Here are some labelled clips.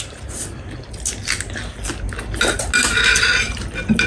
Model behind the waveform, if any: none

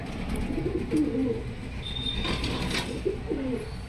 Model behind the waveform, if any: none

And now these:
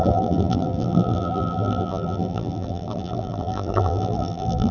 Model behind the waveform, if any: vocoder, BigVGAN v2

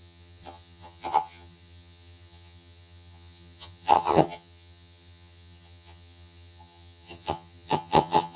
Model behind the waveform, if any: vocoder, HiFi-GAN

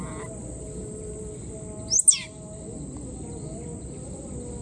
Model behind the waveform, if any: none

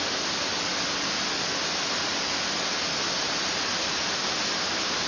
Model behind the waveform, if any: none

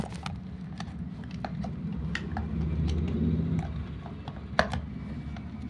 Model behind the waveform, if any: none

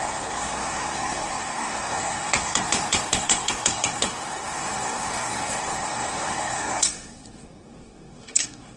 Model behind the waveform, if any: codec, SNAC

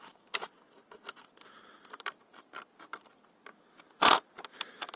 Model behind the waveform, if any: none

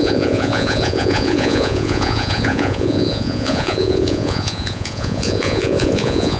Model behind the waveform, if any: vocoder, Vocos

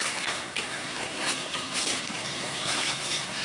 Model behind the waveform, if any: codec, SNAC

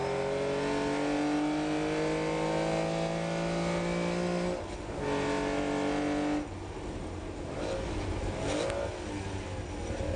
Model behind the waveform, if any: none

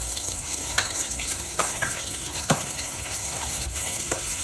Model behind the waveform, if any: codec, SNAC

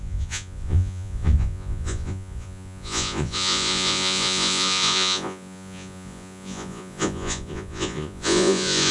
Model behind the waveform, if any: vocoder, Vocos